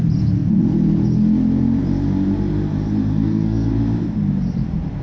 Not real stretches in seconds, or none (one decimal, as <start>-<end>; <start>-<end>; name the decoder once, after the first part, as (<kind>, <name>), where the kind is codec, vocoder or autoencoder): 3.1-3.7 (codec, SNAC)